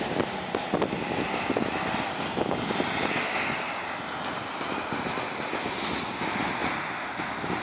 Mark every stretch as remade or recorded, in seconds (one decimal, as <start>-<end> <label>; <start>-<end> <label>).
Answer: 0.0-7.6 recorded